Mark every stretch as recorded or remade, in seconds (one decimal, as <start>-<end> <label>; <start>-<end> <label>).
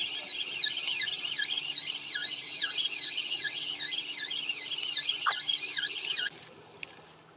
0.0-2.2 recorded; 2.2-3.7 remade; 3.7-7.4 recorded